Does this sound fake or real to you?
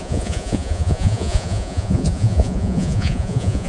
fake